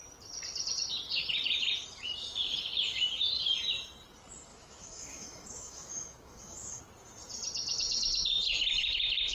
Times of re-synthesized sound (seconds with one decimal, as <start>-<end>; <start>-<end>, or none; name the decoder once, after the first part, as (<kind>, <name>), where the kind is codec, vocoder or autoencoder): 4.5-6.8 (autoencoder, DAC-VAE)